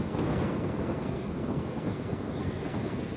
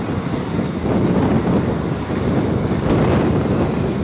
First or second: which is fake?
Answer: first